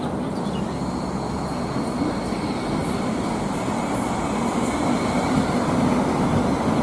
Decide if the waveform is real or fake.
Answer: real